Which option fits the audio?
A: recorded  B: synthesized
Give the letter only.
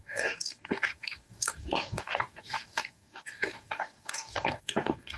B